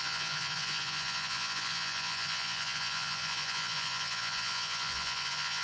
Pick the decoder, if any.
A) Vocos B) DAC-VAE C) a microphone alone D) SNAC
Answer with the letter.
A